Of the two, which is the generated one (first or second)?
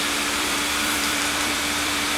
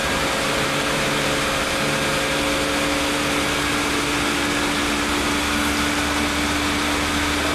first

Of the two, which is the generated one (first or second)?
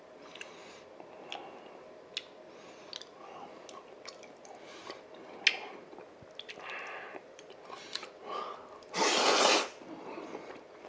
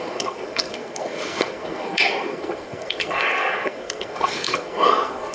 second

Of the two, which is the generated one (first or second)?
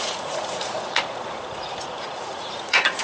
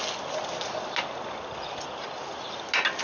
first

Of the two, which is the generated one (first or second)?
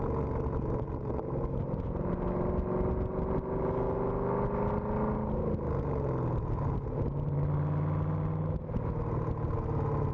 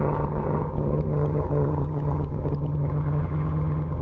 second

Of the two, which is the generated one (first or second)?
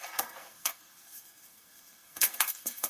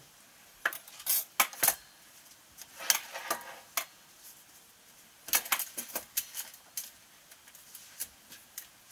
first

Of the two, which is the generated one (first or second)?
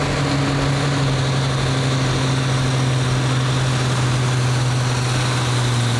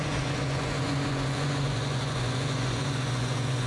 second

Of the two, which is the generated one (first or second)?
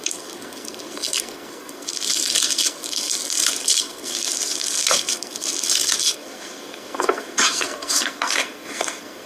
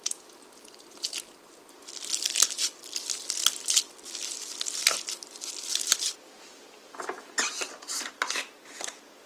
first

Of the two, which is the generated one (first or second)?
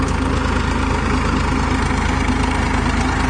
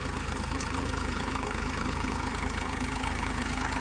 second